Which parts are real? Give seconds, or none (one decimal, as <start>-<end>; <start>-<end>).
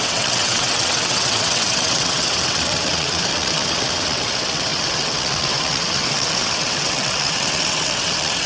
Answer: none